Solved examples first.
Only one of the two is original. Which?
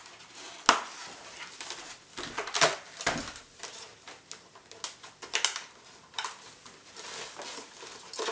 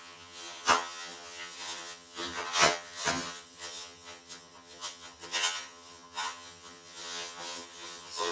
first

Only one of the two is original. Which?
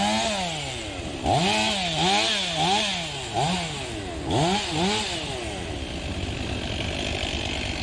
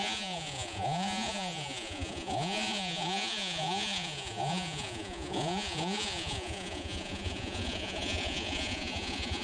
first